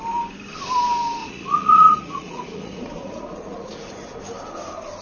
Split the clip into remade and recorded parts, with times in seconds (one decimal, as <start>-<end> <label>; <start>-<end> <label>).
0.0-1.2 recorded; 1.2-4.2 remade; 4.2-5.0 recorded